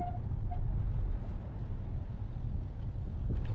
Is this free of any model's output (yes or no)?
yes